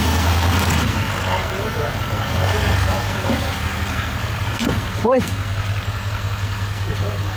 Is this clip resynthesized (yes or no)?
yes